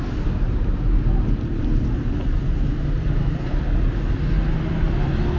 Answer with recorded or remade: recorded